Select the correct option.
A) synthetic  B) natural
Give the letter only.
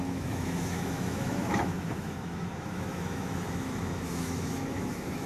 A